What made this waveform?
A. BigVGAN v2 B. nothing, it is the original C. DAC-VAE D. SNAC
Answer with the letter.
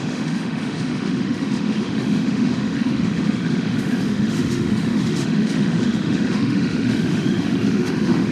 C